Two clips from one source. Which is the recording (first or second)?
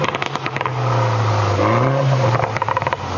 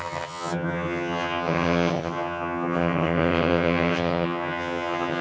first